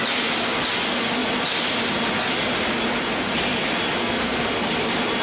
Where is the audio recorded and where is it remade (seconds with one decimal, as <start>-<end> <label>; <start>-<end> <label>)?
0.0-4.0 recorded; 4.0-4.5 remade; 4.5-5.2 recorded